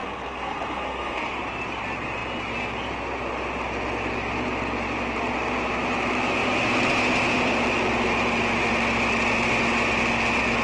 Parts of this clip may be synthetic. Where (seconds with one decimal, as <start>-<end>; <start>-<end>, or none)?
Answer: 0.0-1.3